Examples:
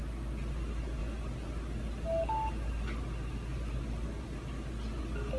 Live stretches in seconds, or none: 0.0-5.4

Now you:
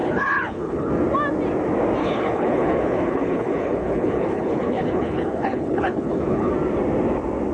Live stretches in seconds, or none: 0.9-2.0; 6.5-7.5